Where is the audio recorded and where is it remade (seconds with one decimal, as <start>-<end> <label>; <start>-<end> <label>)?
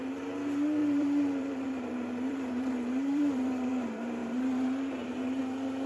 0.0-0.8 recorded; 0.8-3.7 remade; 3.7-4.2 recorded; 4.2-5.4 remade; 5.4-5.9 recorded